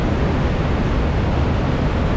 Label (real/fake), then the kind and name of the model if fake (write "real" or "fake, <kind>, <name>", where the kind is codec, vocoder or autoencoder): real